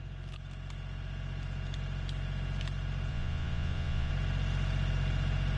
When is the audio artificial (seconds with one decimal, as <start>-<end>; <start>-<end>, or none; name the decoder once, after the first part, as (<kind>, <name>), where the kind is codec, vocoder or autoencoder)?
3.1-4.1 (vocoder, Vocos)